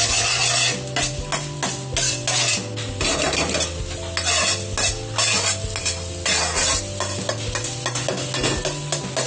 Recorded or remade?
recorded